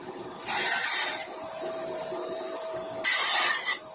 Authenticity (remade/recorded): remade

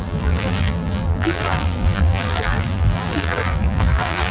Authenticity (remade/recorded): remade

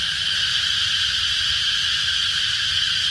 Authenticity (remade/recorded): recorded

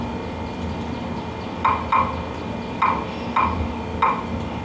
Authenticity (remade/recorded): recorded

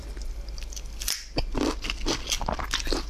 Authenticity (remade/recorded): recorded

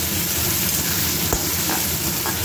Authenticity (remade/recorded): recorded